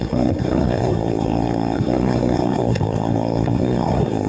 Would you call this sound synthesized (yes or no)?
yes